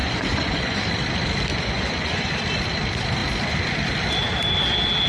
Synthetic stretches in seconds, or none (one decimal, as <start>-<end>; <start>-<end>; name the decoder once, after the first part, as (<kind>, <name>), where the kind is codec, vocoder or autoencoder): 0.0-0.8 (vocoder, Vocos); 1.5-2.3